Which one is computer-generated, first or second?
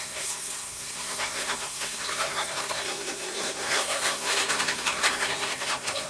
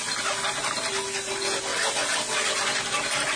first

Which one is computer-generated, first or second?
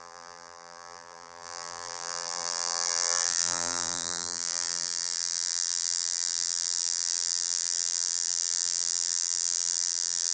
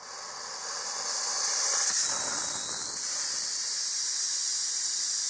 first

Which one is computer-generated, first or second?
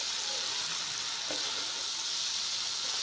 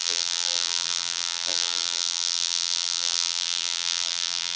second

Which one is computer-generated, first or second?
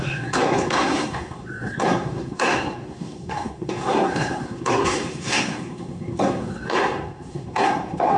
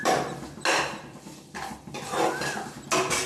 first